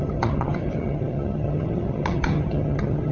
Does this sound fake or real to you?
fake